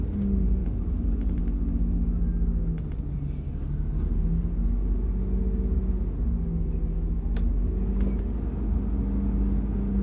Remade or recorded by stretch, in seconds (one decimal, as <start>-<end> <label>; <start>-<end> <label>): 0.0-0.6 recorded; 0.6-1.4 remade; 1.4-10.0 recorded